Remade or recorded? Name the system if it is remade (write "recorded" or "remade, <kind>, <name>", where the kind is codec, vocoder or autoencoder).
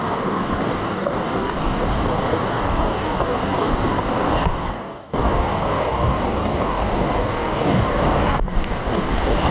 remade, codec, DAC